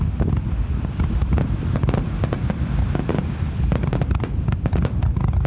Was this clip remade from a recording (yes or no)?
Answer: no